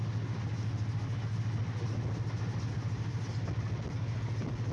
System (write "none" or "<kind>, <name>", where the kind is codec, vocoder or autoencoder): none